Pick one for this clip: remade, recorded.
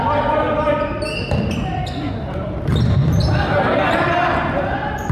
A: recorded